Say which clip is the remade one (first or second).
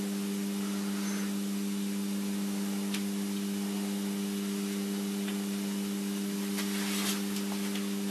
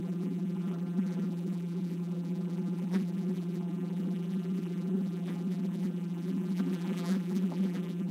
second